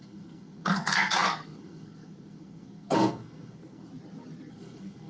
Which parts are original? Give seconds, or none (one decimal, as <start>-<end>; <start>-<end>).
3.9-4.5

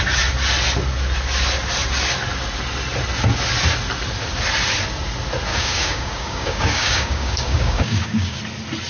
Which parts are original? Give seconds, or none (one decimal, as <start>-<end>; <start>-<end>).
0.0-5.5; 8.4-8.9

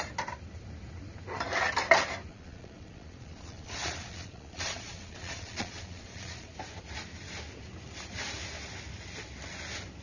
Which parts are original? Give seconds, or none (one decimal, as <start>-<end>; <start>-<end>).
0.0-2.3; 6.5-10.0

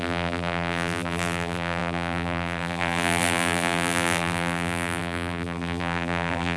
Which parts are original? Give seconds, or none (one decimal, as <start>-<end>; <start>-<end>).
none

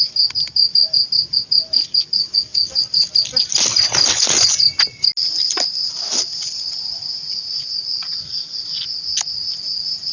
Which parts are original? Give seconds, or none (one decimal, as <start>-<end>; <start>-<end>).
0.0-5.2; 5.9-10.1

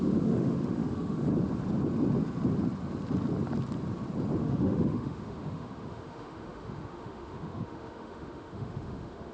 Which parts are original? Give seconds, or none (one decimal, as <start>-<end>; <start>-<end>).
1.3-4.4